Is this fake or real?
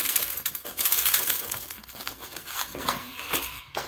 fake